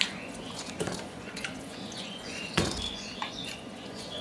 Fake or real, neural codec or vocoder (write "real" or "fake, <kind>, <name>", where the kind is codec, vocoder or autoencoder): fake, vocoder, Vocos